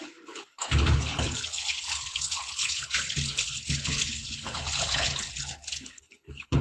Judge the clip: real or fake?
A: fake